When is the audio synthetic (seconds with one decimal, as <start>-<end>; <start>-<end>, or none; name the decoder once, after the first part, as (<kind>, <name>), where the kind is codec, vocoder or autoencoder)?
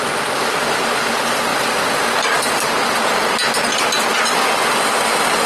none